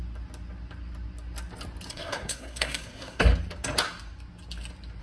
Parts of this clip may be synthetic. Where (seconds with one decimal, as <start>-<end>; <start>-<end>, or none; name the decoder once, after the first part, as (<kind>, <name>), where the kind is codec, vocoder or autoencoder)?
1.9-3.3 (codec, SNAC)